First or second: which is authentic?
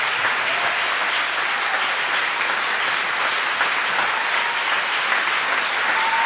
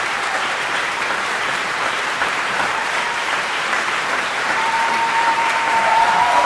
first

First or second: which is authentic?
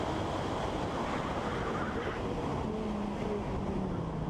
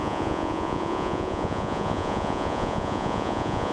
first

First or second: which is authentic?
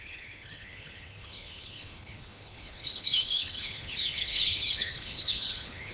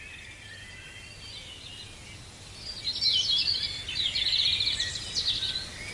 second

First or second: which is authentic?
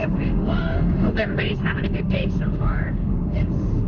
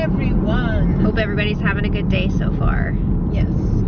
second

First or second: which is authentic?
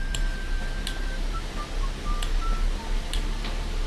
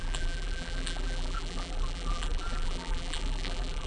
first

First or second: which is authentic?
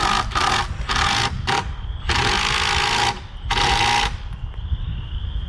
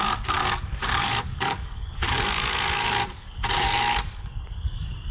first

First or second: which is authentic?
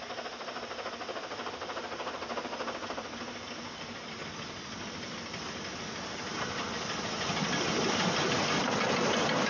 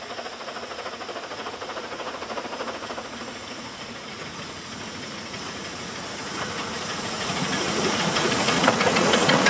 first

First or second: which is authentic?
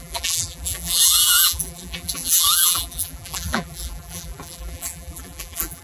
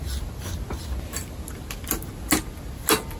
second